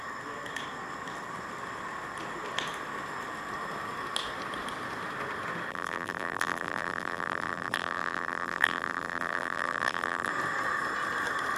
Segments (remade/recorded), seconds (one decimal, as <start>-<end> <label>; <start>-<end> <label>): 0.0-5.7 recorded; 5.7-10.3 remade; 10.3-11.6 recorded